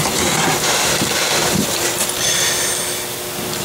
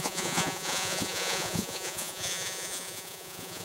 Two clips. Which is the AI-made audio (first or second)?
second